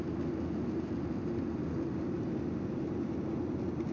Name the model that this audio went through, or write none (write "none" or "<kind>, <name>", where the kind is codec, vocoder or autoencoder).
none